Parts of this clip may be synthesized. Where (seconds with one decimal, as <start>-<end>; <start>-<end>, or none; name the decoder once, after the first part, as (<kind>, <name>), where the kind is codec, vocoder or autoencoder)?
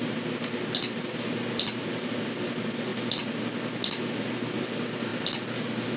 none